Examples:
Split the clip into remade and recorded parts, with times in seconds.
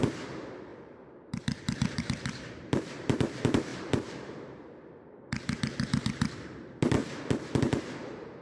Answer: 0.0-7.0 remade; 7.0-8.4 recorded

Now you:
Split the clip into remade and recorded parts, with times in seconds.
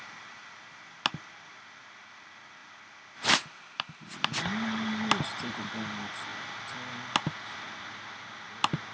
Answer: 0.0-8.9 recorded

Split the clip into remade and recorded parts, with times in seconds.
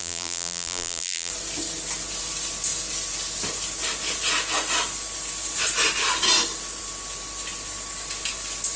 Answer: 0.0-1.3 remade; 1.3-8.8 recorded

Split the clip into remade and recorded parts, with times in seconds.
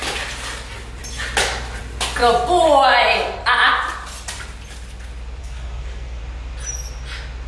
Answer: 0.0-5.4 recorded; 5.4-6.2 remade; 6.2-7.5 recorded